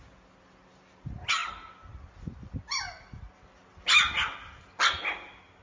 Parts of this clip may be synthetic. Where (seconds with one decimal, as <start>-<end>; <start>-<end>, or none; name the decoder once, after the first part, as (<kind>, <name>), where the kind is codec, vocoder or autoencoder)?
none